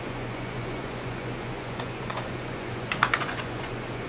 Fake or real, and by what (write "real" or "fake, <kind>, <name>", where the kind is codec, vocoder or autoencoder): fake, vocoder, Vocos